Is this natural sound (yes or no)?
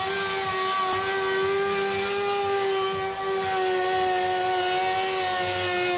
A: yes